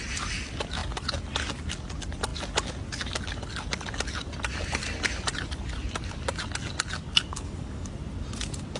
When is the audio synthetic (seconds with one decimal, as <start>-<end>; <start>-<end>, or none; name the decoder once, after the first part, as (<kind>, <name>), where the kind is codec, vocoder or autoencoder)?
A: 7.3-7.9 (codec, DAC)

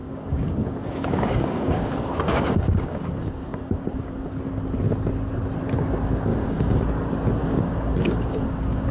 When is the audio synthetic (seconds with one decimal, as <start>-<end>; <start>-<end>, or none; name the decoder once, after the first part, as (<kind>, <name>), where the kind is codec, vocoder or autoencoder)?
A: 0.0-4.3 (codec, DAC); 6.3-6.9; 7.4-8.9

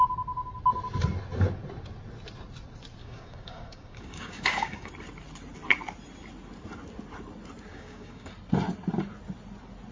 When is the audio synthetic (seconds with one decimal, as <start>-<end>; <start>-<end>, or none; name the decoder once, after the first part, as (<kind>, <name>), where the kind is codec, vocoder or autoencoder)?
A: 3.0-4.9 (codec, DAC); 7.7-8.3

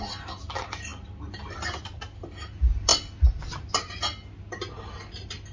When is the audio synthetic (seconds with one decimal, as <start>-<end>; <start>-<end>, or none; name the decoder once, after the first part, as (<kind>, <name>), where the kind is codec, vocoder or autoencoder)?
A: none

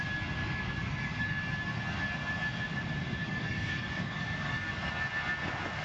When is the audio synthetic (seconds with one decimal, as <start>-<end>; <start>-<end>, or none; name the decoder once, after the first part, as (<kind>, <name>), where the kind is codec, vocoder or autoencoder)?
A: 0.4-1.4 (codec, DAC); 3.2-4.9

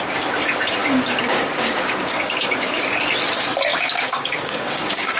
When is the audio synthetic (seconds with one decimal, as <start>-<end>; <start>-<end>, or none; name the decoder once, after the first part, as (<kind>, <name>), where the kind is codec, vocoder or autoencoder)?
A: 0.8-2.8 (codec, DAC); 3.7-5.2

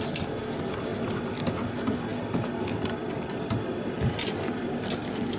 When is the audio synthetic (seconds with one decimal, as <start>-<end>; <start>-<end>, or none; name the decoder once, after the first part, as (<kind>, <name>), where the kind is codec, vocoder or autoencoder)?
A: none

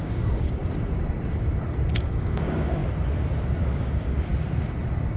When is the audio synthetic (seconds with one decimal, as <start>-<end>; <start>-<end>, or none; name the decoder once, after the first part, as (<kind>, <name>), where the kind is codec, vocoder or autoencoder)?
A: 0.0-0.6 (codec, DAC); 1.9-2.8; 3.6-4.3